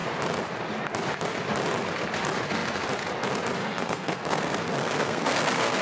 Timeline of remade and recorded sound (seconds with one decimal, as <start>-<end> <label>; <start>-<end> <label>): 0.0-3.6 recorded; 3.6-5.8 remade